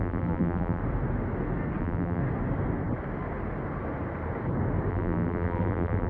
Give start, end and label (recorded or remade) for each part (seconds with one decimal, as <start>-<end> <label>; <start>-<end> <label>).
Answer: 0.0-0.8 remade; 0.8-1.8 recorded; 1.8-2.2 remade; 2.2-4.9 recorded; 4.9-6.1 remade